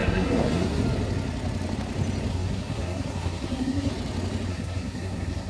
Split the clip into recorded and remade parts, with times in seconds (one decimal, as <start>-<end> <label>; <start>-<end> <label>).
0.0-0.8 remade; 0.8-2.3 recorded; 2.3-3.9 remade; 3.9-4.5 recorded; 4.5-5.5 remade